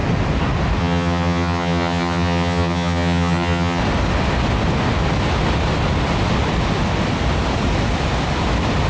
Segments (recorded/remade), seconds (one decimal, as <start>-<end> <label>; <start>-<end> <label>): 0.0-0.8 recorded; 0.8-3.8 remade; 3.8-8.9 recorded